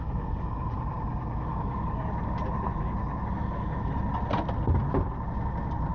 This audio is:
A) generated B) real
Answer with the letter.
B